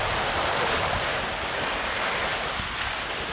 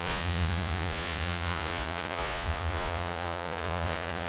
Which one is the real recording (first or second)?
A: first